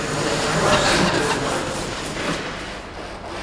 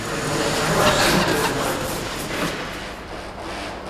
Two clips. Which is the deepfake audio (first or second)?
first